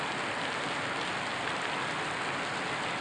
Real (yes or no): yes